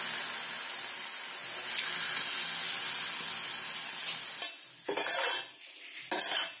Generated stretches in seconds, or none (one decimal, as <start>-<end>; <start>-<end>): none